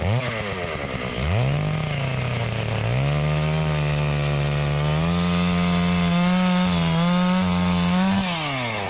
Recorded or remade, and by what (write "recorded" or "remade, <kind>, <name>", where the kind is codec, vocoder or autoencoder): recorded